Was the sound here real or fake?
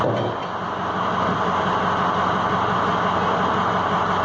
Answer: real